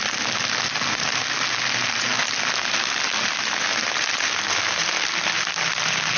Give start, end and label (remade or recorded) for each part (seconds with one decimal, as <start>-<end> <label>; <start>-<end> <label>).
0.0-6.2 recorded